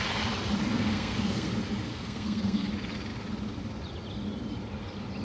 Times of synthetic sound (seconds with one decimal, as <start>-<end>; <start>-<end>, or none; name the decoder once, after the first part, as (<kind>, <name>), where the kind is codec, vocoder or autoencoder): 0.7-1.5 (codec, SNAC); 1.9-2.7